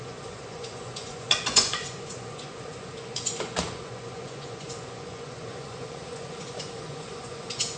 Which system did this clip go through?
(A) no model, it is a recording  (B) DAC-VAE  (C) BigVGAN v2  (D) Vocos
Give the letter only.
D